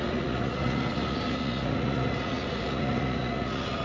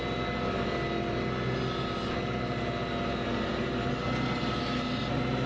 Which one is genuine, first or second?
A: second